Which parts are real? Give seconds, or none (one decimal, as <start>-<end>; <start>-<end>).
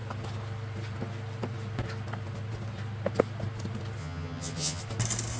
0.0-4.0; 4.8-5.4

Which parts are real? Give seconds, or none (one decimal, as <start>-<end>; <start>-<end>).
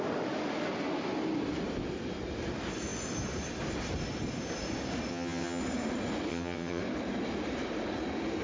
0.0-5.1; 5.6-6.3; 6.8-8.4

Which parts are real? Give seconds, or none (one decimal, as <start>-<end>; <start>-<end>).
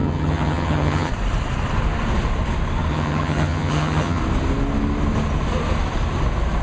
1.1-2.9; 4.2-6.6